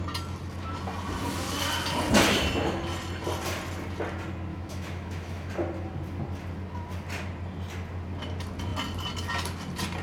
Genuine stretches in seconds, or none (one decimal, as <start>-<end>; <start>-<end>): 0.0-4.5; 5.5-10.0